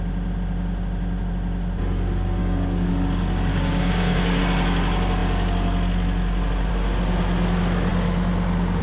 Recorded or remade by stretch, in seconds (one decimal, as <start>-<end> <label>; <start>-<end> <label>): 0.0-2.4 recorded; 2.4-2.9 remade; 2.9-3.5 recorded; 3.5-4.4 remade; 4.4-8.8 recorded